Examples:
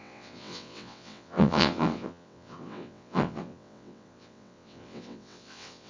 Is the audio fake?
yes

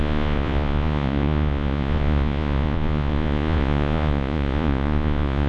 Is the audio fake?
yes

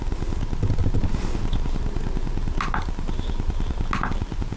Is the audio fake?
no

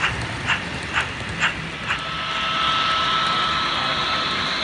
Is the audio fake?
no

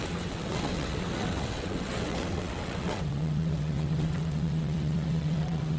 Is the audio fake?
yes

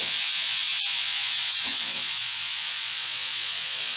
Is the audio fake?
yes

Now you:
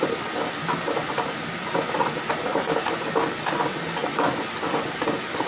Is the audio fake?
no